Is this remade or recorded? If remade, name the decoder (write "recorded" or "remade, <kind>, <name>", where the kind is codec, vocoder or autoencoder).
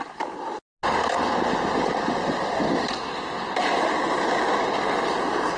recorded